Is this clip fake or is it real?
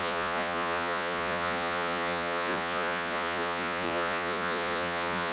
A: fake